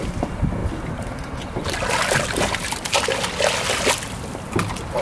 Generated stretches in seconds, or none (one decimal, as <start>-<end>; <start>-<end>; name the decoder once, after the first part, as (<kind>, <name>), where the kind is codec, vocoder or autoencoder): none